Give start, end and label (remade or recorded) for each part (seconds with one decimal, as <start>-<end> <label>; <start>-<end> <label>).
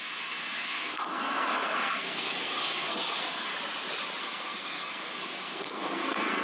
0.0-3.5 remade; 3.5-4.2 recorded; 4.2-6.4 remade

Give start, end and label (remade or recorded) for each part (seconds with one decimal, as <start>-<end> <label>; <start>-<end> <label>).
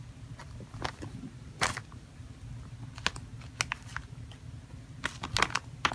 0.0-5.9 recorded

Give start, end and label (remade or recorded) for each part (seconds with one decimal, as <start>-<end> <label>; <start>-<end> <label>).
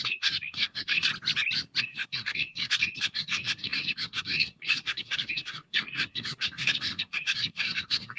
0.0-1.1 remade; 1.1-1.8 recorded; 1.8-8.2 remade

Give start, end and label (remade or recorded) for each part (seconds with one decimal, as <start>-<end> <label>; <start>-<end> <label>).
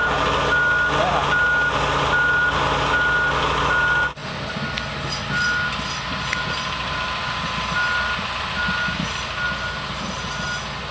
0.0-10.9 recorded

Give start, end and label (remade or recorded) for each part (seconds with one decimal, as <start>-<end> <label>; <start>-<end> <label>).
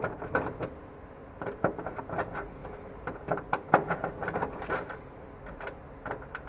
0.0-6.5 recorded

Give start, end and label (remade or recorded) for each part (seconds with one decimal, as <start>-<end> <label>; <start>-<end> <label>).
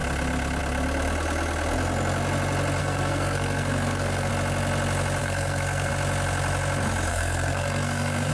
0.0-2.8 recorded; 2.8-4.3 remade; 4.3-5.2 recorded; 5.2-5.9 remade; 5.9-7.1 recorded; 7.1-8.3 remade